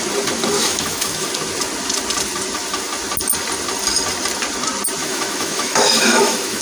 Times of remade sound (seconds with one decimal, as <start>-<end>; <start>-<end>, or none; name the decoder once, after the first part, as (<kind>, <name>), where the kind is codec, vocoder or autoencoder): 0.6-1.3 (autoencoder, DAC-VAE); 5.0-6.6

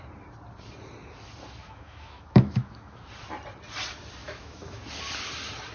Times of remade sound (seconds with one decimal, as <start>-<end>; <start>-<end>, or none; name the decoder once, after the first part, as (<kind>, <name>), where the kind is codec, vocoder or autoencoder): 1.6-3.1 (autoencoder, DAC-VAE); 4.2-4.8

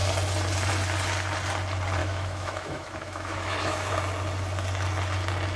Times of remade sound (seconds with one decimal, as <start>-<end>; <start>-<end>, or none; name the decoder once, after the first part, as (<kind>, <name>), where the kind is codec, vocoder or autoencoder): 2.0-3.9 (autoencoder, DAC-VAE)